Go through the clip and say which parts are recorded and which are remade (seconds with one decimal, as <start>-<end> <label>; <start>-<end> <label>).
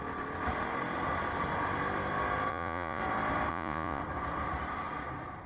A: 0.0-2.5 recorded; 2.5-3.0 remade; 3.0-3.5 recorded; 3.5-4.0 remade; 4.0-5.5 recorded